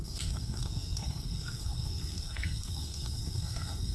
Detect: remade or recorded remade